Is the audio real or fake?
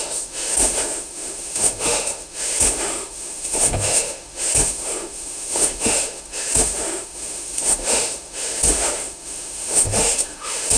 fake